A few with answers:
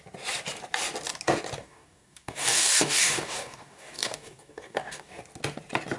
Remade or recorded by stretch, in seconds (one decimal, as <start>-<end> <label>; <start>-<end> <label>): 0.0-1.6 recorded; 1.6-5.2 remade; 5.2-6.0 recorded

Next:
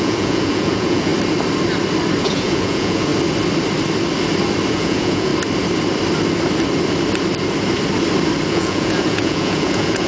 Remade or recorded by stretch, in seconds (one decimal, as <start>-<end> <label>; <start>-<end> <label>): 0.0-1.1 remade; 1.1-2.2 recorded; 2.2-3.1 remade; 3.1-4.7 recorded; 4.7-5.3 remade; 5.3-8.5 recorded; 8.5-10.1 remade

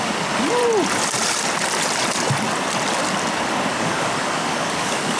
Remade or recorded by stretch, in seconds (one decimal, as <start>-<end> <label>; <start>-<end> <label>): 0.0-0.6 remade; 0.6-3.7 recorded; 3.7-5.2 remade

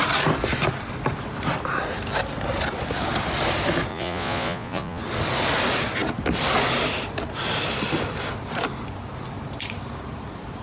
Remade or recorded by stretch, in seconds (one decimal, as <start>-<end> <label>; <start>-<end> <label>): 0.0-3.9 recorded; 3.9-5.0 remade; 5.0-10.6 recorded

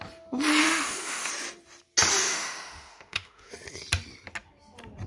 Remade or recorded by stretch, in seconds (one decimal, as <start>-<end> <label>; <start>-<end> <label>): 0.0-0.6 recorded; 0.6-1.3 remade; 1.3-2.2 recorded; 2.2-3.5 remade; 3.5-5.1 recorded